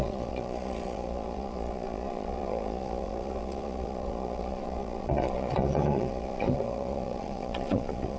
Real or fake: fake